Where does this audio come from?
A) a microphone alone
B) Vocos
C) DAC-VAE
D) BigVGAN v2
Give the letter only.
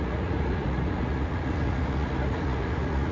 B